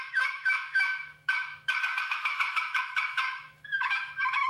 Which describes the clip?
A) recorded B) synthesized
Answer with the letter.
B